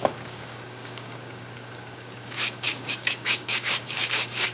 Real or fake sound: fake